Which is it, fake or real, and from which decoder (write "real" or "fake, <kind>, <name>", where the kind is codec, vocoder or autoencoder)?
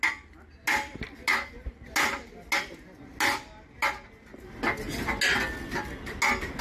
real